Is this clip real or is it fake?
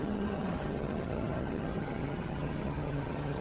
fake